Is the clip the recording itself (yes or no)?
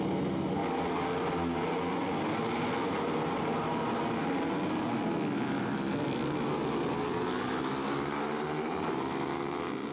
yes